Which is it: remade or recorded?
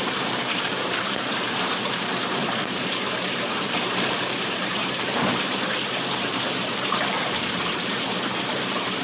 remade